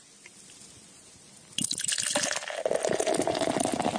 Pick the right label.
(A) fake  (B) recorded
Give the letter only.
B